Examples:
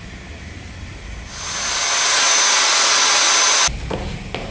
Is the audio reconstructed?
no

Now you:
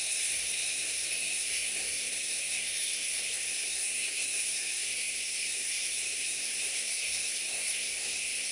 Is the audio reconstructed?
yes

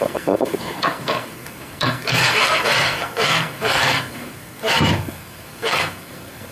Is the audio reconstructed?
yes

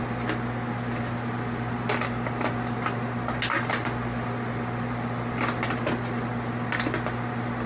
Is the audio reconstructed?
no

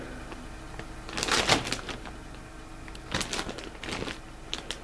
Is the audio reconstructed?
no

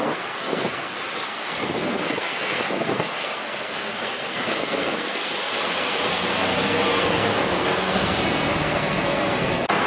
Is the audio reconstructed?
yes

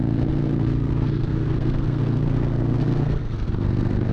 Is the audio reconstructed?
yes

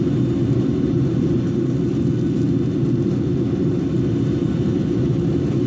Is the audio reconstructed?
no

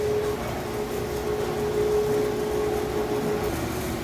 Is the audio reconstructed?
no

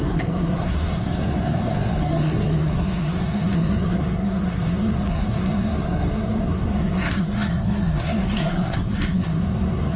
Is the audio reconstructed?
yes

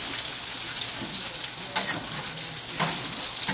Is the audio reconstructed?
no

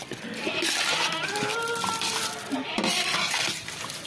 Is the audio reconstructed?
no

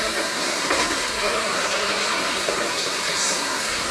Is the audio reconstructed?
yes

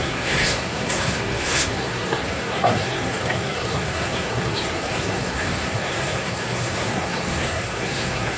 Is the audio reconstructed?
yes